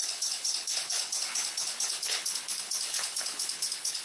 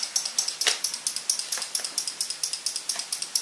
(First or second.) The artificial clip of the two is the first